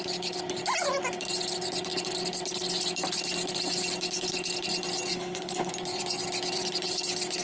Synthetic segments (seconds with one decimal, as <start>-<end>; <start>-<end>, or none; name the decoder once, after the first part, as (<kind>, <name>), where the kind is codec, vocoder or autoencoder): 5.1-5.7 (codec, HILCodec)